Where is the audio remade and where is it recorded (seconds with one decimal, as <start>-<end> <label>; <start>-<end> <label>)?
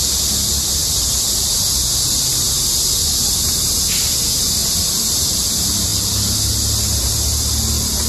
0.0-0.8 recorded; 0.8-2.3 remade; 2.3-4.6 recorded; 4.6-5.5 remade; 5.5-8.1 recorded